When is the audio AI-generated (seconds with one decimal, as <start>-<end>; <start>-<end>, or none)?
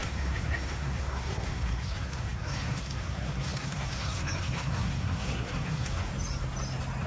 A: 0.0-6.1